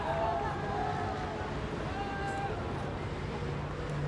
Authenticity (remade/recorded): recorded